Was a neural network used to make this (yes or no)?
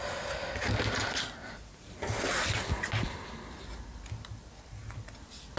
no